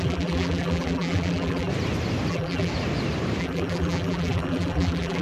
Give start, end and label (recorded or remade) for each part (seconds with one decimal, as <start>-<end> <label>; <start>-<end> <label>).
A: 0.0-1.7 remade; 1.7-2.3 recorded; 2.3-2.7 remade; 2.7-3.4 recorded; 3.4-5.2 remade